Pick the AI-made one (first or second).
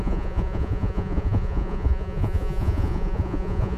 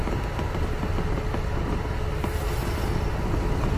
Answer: first